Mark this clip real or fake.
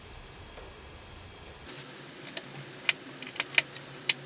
real